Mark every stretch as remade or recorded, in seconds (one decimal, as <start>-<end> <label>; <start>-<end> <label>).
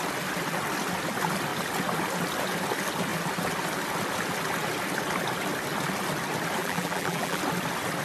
0.0-6.6 recorded; 6.6-7.4 remade; 7.4-8.0 recorded